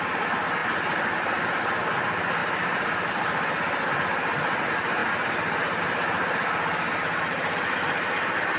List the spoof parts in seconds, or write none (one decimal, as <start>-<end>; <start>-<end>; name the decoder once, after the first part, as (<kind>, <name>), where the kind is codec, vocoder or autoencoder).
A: 2.4-3.1 (vocoder, BigVGAN v2)